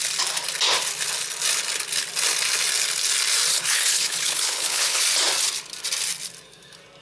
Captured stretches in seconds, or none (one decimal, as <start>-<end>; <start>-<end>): 0.0-3.5; 5.0-7.0